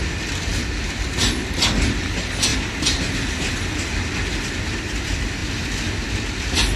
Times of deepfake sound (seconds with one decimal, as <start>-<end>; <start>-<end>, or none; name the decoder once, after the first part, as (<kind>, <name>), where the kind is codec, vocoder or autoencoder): 2.5-3.5 (vocoder, BigVGAN v2)